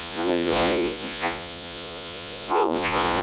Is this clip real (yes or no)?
no